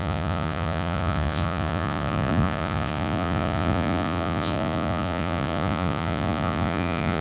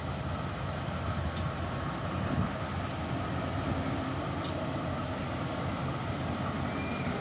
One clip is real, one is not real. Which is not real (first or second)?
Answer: first